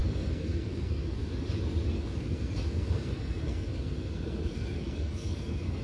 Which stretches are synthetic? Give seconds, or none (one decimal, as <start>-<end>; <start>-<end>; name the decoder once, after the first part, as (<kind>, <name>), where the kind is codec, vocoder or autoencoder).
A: 0.0-1.3 (codec, SNAC); 1.9-5.8